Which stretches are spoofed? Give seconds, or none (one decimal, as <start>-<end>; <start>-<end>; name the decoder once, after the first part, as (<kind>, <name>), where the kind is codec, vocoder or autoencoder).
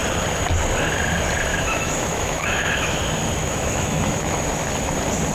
1.5-3.0 (autoencoder, DAC-VAE); 3.4-4.3